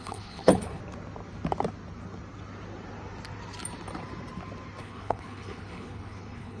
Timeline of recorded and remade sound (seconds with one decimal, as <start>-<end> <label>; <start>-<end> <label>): 0.0-0.8 remade; 0.8-4.8 recorded; 4.8-6.6 remade